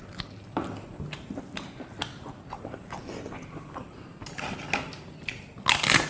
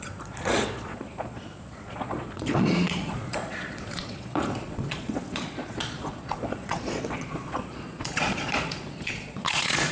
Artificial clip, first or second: second